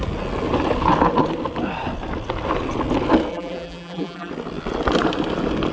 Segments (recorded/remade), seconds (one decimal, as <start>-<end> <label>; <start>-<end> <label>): 0.0-3.3 recorded; 3.3-4.3 remade; 4.3-5.7 recorded